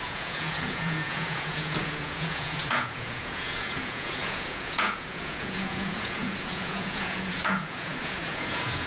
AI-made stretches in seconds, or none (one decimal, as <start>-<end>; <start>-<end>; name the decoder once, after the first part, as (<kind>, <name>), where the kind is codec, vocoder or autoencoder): 0.0-8.9 (vocoder, Vocos)